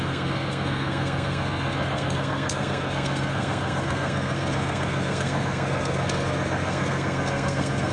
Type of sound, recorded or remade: remade